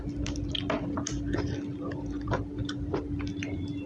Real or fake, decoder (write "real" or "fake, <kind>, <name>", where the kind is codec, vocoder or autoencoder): fake, vocoder, BigVGAN v2